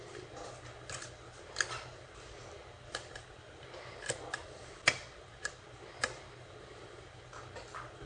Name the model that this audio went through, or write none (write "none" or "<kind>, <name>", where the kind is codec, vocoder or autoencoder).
none